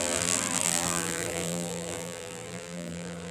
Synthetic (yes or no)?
yes